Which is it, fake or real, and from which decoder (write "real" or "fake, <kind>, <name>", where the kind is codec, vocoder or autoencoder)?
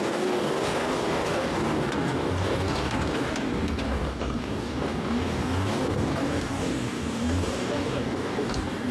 fake, codec, DAC